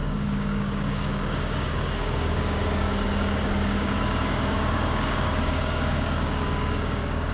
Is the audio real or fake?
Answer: fake